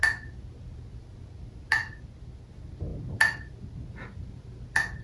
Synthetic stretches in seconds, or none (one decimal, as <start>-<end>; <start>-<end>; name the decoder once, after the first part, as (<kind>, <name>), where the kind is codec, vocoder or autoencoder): none